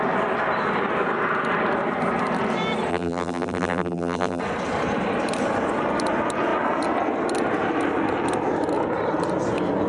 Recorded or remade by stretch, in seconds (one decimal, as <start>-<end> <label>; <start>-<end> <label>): 0.0-2.9 recorded; 2.9-4.4 remade; 4.4-9.9 recorded